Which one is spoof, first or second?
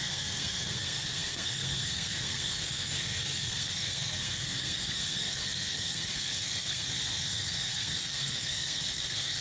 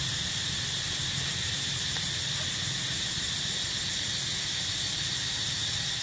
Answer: first